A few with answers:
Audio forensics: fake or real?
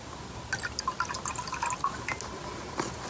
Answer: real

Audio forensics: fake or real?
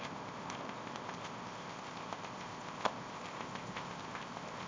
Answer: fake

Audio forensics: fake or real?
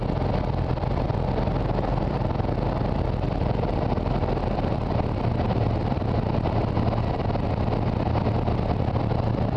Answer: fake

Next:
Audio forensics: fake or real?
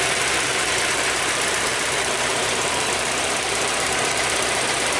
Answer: fake